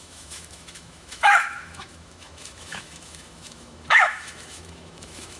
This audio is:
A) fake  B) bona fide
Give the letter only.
A